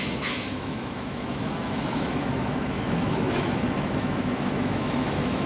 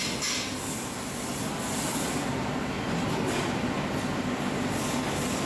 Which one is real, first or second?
second